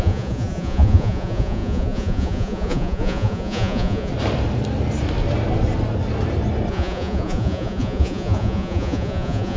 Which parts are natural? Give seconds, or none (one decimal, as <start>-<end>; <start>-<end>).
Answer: 4.1-6.7